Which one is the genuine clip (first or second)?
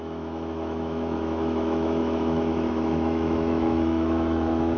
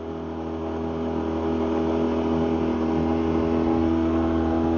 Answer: second